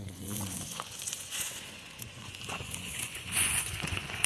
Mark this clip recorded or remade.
remade